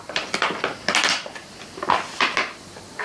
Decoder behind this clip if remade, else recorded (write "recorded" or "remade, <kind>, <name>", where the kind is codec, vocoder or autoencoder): recorded